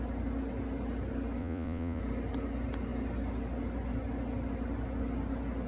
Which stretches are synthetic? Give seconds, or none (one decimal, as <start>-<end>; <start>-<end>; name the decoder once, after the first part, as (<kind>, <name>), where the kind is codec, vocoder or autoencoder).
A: 1.4-2.0 (vocoder, Vocos)